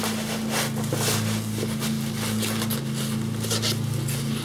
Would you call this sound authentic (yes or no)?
yes